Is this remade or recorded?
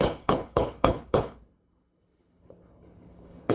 remade